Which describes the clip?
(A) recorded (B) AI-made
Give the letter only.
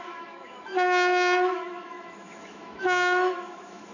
B